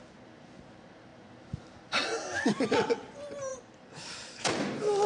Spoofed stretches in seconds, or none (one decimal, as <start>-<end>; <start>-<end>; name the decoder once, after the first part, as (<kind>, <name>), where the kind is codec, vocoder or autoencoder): 3.5-4.4 (vocoder, BigVGAN v2)